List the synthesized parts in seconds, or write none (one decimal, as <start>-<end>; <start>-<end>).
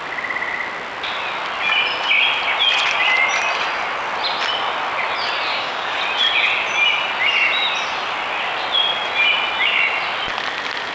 5.5-6.0